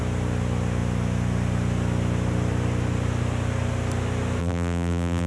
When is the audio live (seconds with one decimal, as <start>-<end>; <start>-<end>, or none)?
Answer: 0.0-4.4